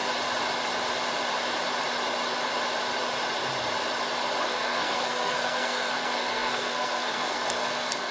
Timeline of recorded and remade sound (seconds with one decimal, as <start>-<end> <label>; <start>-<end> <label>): 0.0-4.4 recorded; 4.4-8.1 remade